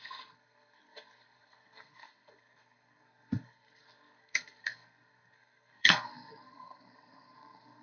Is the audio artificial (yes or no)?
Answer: yes